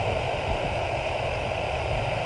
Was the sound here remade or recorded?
recorded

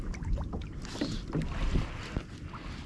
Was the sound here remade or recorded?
recorded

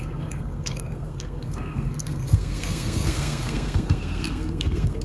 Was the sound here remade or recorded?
remade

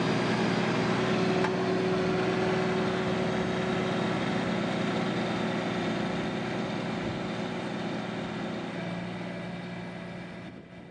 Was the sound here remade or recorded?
recorded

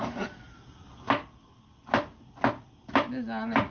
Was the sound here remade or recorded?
recorded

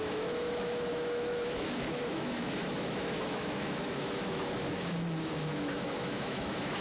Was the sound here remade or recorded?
remade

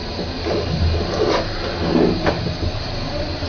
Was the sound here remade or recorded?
recorded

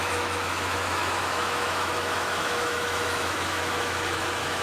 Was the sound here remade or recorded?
remade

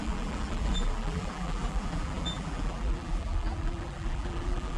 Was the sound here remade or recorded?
remade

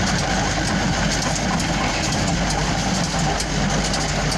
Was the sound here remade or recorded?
recorded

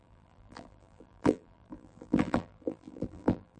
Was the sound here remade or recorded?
remade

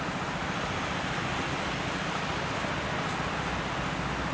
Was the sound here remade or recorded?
recorded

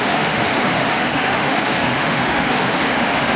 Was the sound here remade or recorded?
remade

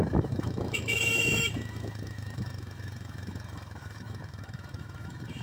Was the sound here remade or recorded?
remade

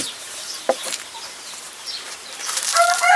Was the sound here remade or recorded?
remade